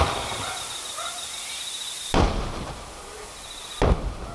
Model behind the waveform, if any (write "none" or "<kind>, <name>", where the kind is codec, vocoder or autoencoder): none